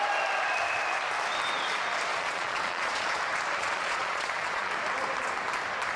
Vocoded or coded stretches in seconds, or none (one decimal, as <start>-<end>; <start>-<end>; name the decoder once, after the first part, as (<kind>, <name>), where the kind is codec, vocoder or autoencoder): 2.1-3.2 (vocoder, Vocos); 3.6-4.7